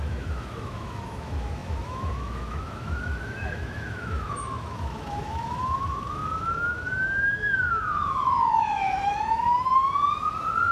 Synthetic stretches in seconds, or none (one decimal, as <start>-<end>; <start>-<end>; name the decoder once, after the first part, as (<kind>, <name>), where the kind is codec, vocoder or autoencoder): 0.0-9.8 (autoencoder, DAC-VAE)

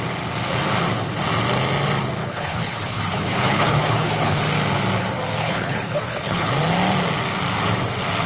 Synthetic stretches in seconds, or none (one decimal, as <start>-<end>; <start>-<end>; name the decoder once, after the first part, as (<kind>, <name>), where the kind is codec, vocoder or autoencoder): 2.2-4.4 (codec, HILCodec); 5.4-6.5

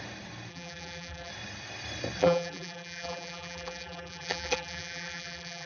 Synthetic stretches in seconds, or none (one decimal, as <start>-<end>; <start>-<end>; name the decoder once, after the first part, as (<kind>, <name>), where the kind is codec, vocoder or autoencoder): 0.5-1.3 (vocoder, BigVGAN v2); 2.2-5.7

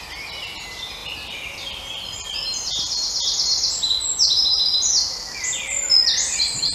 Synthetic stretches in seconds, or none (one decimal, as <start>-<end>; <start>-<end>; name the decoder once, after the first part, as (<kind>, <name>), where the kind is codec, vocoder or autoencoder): 1.0-1.9 (vocoder, BigVGAN v2); 5.6-6.7

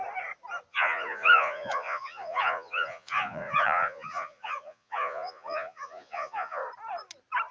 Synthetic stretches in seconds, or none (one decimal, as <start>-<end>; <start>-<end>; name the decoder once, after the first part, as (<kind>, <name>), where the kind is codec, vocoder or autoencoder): 0.7-6.6 (vocoder, Vocos)

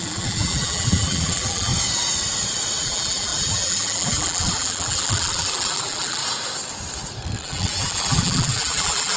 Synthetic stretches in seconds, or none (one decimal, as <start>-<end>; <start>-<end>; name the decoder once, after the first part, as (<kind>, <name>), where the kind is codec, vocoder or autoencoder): 0.0-1.7 (vocoder, BigVGAN v2); 2.8-6.2; 7.4-9.2